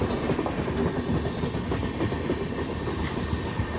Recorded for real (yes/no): yes